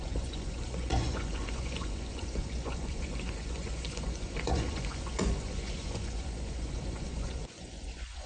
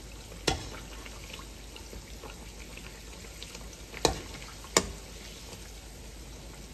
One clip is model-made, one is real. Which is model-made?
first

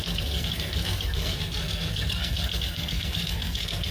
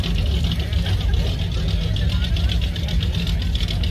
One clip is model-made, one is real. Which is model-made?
first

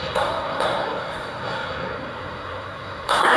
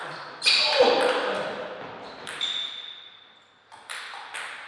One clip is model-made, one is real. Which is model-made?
first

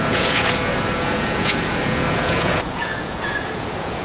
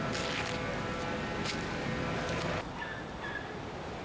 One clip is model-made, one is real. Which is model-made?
first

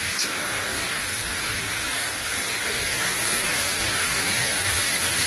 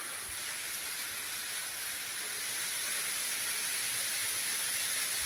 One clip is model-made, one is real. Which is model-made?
first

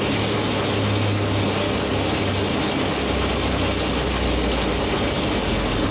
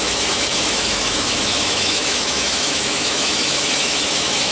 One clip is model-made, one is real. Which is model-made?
second